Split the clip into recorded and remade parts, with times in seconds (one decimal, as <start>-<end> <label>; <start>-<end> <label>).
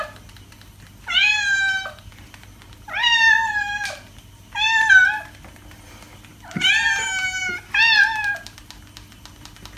0.0-9.8 recorded